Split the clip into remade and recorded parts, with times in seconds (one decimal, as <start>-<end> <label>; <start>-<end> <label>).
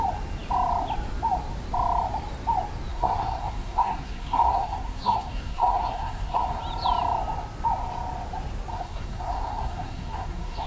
0.0-2.9 recorded; 2.9-6.6 remade; 6.6-8.7 recorded; 8.7-10.7 remade